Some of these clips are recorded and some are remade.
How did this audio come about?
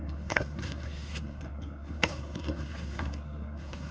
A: remade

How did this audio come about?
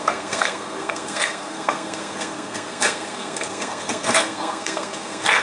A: remade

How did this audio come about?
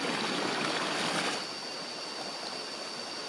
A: recorded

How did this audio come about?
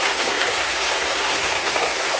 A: remade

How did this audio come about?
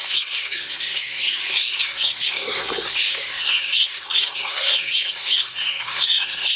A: remade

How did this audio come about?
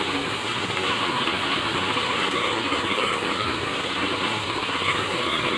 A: remade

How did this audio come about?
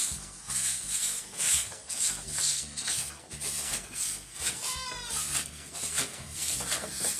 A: remade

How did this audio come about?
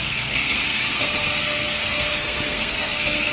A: remade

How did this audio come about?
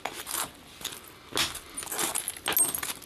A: recorded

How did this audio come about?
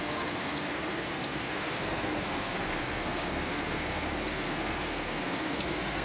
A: remade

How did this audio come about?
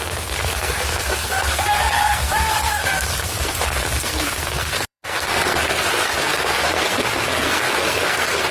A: remade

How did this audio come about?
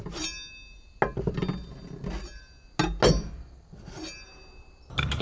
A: recorded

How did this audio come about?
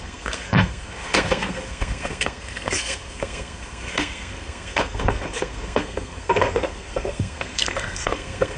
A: remade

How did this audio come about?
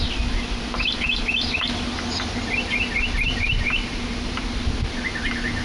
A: recorded